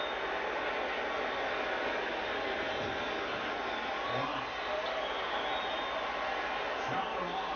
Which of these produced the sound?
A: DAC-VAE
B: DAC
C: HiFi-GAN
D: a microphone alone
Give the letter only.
D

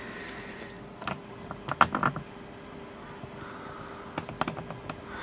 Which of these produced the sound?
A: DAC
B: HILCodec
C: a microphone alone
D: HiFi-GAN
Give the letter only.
C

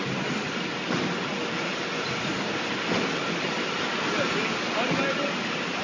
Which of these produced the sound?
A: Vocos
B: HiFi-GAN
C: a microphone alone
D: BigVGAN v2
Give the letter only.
C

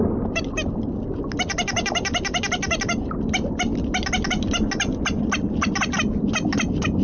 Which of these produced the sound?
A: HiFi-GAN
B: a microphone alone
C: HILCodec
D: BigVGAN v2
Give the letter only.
B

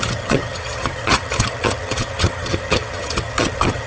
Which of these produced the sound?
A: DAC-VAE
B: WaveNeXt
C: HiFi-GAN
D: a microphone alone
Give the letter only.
C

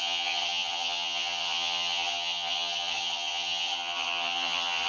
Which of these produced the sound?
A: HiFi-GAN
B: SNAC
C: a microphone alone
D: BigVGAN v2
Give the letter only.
A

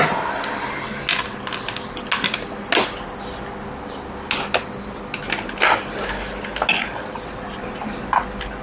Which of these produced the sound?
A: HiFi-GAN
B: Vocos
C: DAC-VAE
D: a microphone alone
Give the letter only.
D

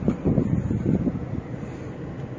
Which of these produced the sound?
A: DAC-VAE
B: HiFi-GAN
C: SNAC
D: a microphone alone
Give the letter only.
D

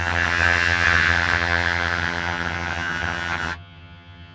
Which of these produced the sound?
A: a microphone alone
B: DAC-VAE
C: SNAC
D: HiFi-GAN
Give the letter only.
D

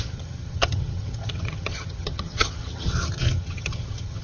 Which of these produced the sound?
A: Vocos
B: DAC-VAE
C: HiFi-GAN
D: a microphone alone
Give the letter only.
C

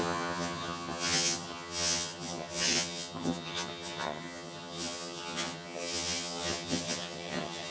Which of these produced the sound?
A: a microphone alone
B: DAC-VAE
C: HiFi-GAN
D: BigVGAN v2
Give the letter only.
C